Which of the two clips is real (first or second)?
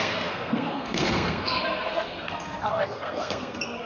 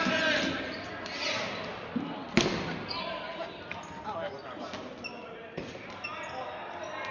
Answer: second